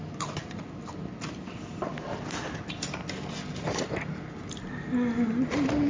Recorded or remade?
recorded